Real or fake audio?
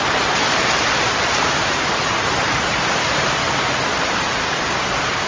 real